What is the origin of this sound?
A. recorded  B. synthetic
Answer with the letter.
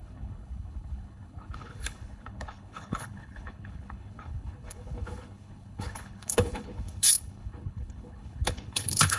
B